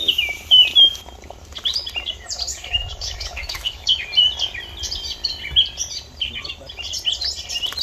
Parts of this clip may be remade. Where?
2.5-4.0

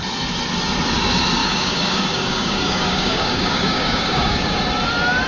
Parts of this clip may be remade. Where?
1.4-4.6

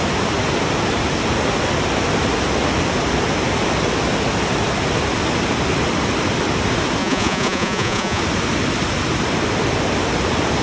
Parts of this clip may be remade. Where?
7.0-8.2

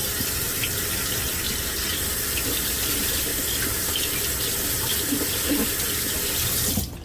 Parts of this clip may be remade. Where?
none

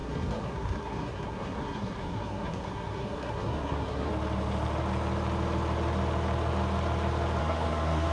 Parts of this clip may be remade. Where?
0.0-4.1; 7.4-8.1

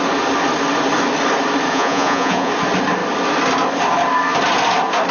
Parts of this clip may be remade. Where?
1.7-2.5

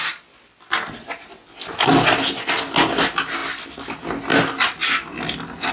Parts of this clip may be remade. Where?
none